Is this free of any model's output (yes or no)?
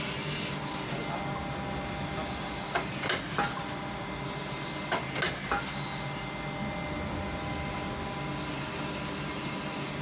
yes